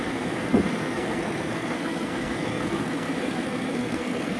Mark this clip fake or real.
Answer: fake